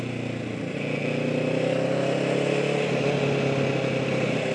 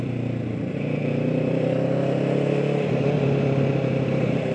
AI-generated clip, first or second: second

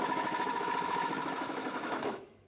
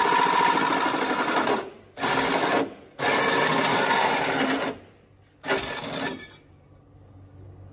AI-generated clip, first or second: first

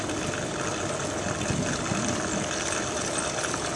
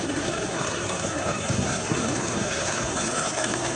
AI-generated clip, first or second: second